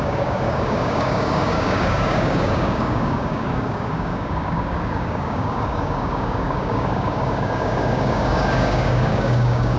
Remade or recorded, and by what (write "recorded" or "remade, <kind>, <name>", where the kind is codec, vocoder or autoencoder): remade, codec, DAC